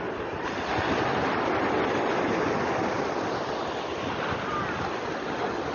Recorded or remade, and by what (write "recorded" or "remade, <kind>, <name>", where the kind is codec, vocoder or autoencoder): recorded